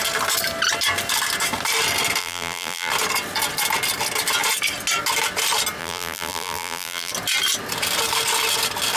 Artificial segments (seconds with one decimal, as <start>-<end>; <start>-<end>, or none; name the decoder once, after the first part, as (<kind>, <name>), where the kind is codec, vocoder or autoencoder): 2.2-2.9 (vocoder, BigVGAN v2); 5.8-7.1